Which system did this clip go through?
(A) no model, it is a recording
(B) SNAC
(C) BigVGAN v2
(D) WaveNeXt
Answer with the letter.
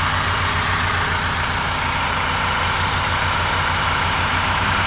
C